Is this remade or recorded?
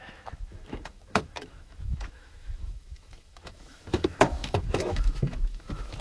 remade